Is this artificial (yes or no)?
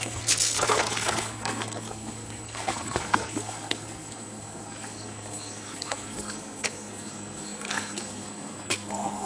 yes